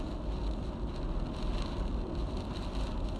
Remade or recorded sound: recorded